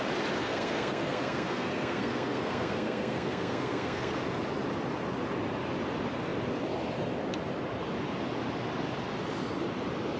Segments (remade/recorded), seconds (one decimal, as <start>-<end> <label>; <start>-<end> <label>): 0.0-0.4 recorded; 0.4-4.1 remade; 4.1-10.2 recorded